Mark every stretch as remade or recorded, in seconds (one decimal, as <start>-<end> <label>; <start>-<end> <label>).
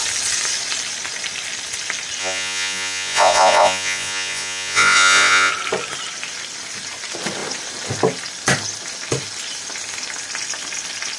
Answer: 0.0-2.2 recorded; 2.2-5.5 remade; 5.5-11.2 recorded